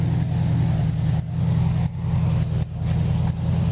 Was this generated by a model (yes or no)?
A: no